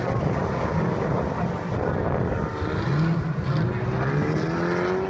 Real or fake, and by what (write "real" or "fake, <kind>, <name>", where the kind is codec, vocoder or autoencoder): real